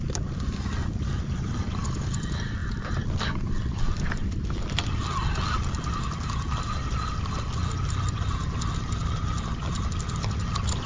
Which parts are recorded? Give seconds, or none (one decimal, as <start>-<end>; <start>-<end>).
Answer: 0.0-10.9